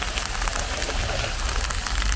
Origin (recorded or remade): recorded